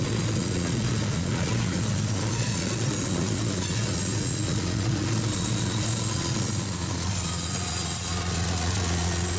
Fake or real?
fake